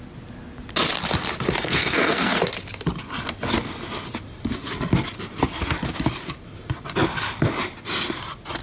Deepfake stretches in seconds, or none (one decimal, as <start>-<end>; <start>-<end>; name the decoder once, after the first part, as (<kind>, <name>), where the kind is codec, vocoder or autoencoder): 1.6-2.4 (codec, SNAC)